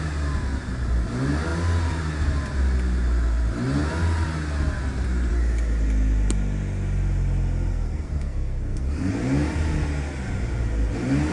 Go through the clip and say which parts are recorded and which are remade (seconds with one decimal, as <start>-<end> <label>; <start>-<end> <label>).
0.0-7.7 recorded; 7.7-9.1 remade; 9.1-11.3 recorded